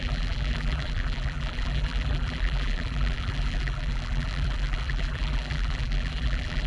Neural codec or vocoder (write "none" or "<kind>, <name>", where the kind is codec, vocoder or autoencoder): vocoder, BigVGAN v2